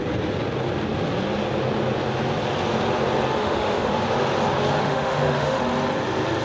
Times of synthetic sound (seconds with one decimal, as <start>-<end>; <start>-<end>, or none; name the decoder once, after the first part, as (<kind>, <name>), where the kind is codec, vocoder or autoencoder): 3.4-3.9 (autoencoder, DAC-VAE); 4.8-5.6